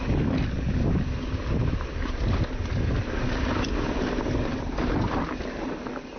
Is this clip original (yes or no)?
yes